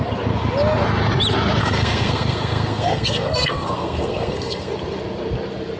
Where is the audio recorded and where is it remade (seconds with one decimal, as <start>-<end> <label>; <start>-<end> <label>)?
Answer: 0.0-1.6 recorded; 1.6-4.7 remade; 4.7-5.8 recorded